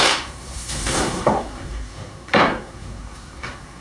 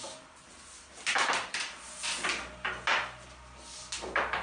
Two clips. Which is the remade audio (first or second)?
first